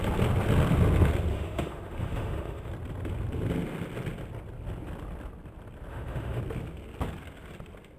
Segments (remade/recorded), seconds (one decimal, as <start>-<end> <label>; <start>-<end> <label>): 0.0-1.3 recorded; 1.3-2.7 remade; 2.7-5.9 recorded; 5.9-6.4 remade; 6.4-8.0 recorded